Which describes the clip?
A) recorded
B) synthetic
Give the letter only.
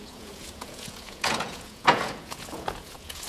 B